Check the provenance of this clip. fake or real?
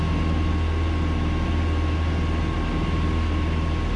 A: real